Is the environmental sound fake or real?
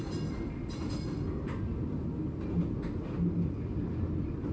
real